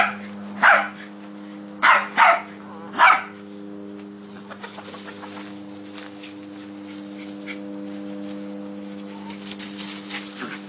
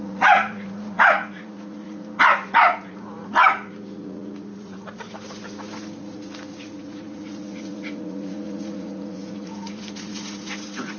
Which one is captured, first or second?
first